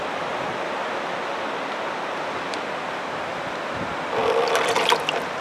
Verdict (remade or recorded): recorded